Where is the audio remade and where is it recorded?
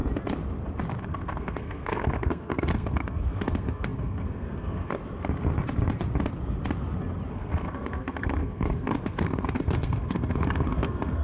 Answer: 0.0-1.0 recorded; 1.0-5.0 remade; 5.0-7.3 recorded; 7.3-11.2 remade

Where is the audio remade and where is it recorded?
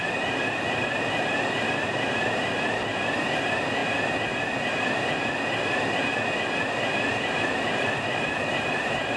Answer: 0.0-3.8 remade; 3.8-7.1 recorded; 7.1-9.2 remade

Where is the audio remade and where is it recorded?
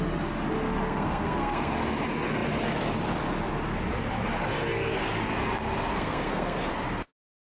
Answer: 0.0-0.8 recorded; 0.8-1.7 remade; 1.7-5.9 recorded; 5.9-6.7 remade; 6.7-7.5 recorded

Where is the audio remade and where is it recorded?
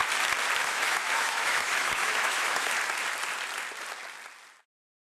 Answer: 0.0-0.6 recorded; 0.6-2.7 remade; 2.7-5.0 recorded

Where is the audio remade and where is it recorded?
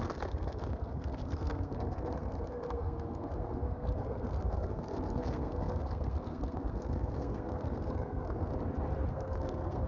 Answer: 0.0-8.5 remade; 8.5-9.1 recorded; 9.1-9.9 remade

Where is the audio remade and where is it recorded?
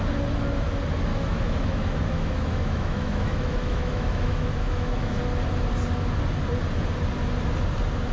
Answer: 0.0-1.1 recorded; 1.1-5.2 remade; 5.2-8.1 recorded